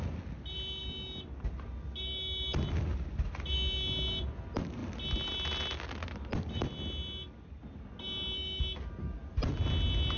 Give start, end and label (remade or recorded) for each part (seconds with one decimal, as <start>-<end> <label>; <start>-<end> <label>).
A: 0.0-10.2 recorded

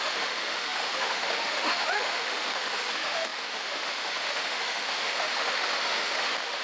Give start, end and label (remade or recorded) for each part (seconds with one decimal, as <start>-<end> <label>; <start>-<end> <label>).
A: 0.0-6.6 remade

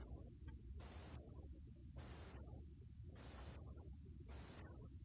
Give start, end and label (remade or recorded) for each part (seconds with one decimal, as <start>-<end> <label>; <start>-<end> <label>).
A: 0.0-5.0 recorded

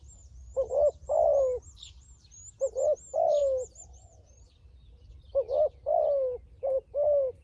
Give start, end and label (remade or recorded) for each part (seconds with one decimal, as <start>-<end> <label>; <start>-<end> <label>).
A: 0.0-7.4 recorded

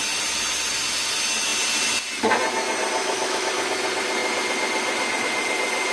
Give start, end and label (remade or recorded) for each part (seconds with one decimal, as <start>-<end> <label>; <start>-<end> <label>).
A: 0.0-3.0 recorded; 3.0-3.5 remade; 3.5-5.9 recorded

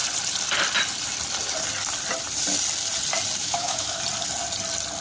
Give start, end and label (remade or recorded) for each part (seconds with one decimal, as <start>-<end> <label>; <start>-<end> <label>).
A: 0.0-3.4 recorded; 3.4-4.0 remade; 4.0-5.0 recorded